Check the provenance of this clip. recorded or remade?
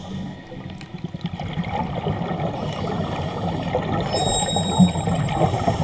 recorded